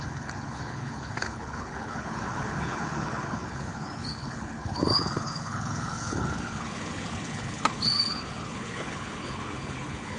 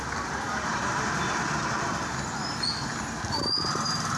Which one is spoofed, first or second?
first